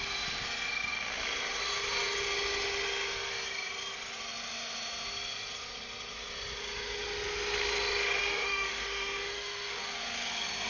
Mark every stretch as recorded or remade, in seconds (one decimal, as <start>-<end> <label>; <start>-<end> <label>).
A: 0.0-8.2 recorded; 8.2-9.8 remade; 9.8-10.7 recorded